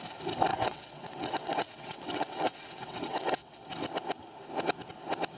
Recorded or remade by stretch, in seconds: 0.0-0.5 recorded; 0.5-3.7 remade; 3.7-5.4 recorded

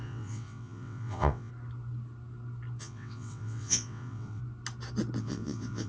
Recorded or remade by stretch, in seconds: 0.0-1.5 remade; 1.5-2.8 recorded; 2.8-4.4 remade; 4.4-5.2 recorded; 5.2-5.9 remade

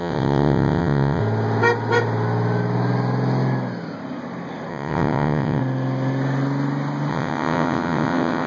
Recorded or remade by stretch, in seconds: 0.0-1.2 remade; 1.2-4.7 recorded; 4.7-5.6 remade; 5.6-7.1 recorded; 7.1-8.5 remade

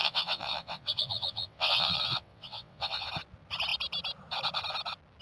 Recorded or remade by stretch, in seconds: 0.0-3.1 remade; 3.1-5.2 recorded